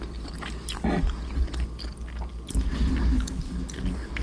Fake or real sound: real